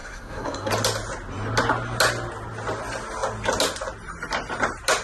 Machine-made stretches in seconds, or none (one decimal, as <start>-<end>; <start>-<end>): 0.0-0.7